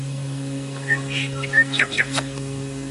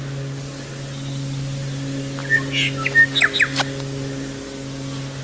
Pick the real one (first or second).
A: second